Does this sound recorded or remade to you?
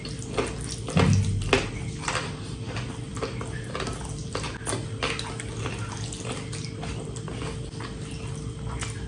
recorded